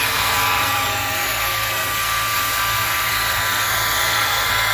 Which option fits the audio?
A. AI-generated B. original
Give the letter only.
A